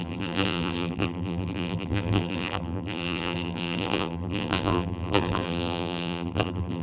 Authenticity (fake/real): fake